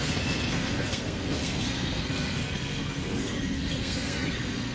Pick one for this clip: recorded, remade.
remade